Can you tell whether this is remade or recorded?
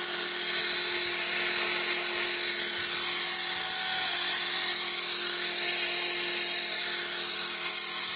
recorded